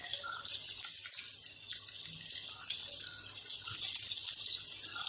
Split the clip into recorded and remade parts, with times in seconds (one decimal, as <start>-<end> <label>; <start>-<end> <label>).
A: 0.0-5.1 recorded